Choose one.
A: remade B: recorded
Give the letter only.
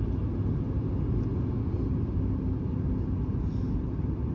B